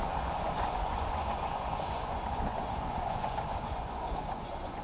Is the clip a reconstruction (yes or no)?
yes